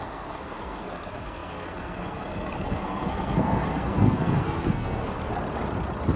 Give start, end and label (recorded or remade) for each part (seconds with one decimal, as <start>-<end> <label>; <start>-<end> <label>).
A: 0.0-5.3 remade; 5.3-6.2 recorded